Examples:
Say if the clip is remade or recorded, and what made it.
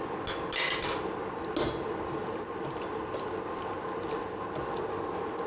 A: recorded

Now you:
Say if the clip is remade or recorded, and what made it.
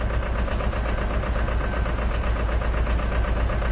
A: recorded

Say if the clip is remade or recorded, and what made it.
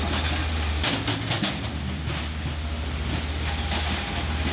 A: recorded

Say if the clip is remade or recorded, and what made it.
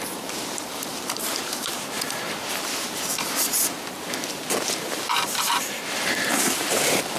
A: remade, vocoder, BigVGAN v2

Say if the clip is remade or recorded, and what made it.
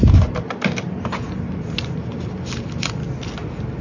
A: recorded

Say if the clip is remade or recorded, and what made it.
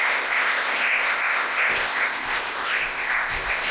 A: remade, codec, ZipCodec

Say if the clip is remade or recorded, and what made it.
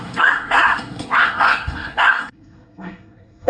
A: remade, codec, SNAC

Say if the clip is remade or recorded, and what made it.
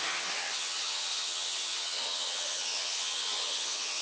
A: remade, vocoder, HiFi-GAN